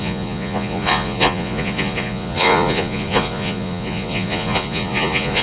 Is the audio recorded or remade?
remade